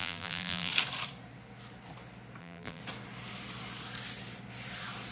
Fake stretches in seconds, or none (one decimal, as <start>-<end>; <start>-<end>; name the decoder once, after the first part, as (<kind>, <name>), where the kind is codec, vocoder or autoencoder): 0.0-0.7 (vocoder, BigVGAN v2); 2.4-2.8